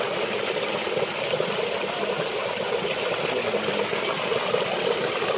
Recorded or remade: recorded